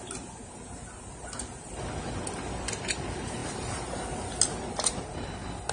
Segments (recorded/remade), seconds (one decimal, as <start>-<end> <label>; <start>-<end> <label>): 0.0-5.7 recorded